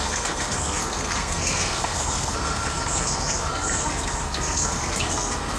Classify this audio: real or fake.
fake